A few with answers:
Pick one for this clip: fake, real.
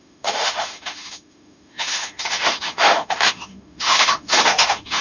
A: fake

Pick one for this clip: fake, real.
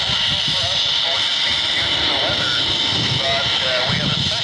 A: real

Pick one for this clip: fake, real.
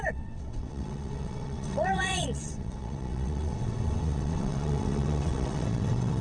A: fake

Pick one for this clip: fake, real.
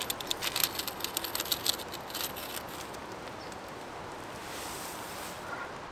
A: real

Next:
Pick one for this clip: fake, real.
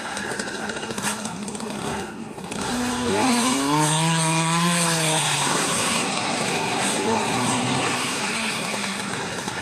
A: fake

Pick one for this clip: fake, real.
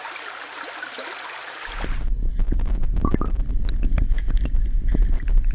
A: real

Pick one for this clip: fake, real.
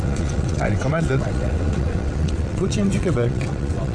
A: fake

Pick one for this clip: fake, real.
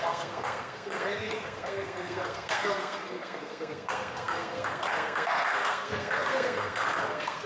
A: fake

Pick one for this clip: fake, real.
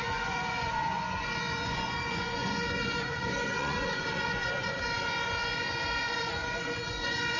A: fake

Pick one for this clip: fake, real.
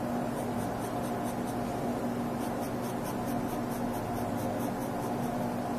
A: real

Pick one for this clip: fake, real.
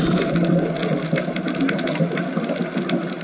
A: real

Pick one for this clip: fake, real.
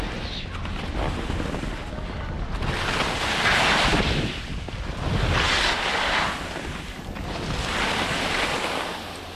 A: real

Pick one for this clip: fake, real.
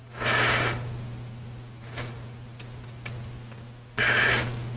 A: real